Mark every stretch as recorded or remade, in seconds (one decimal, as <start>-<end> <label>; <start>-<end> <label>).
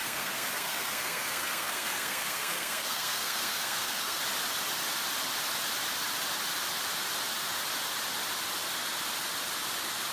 0.0-4.2 remade; 4.2-10.1 recorded